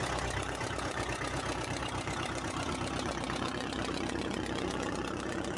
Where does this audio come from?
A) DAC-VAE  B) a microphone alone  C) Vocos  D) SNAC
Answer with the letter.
C